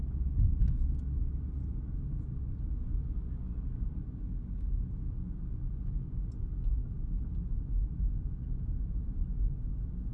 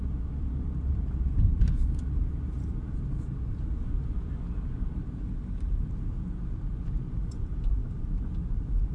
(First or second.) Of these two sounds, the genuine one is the first